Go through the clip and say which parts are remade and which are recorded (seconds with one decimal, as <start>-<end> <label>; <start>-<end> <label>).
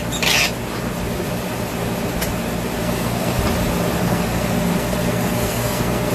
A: 0.0-2.8 recorded; 2.8-3.4 remade; 3.4-4.0 recorded; 4.0-6.1 remade